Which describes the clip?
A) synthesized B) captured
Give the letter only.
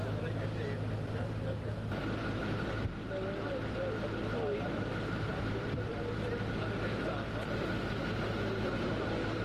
B